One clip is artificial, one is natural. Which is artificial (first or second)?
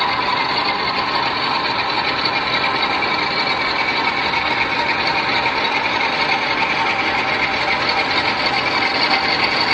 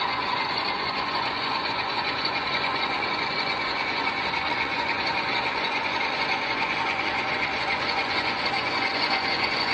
second